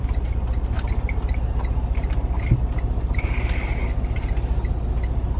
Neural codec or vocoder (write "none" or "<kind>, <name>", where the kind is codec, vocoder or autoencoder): none